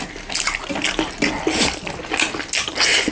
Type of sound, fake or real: real